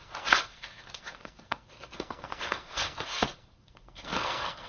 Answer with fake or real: fake